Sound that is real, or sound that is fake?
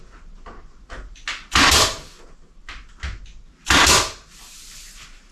real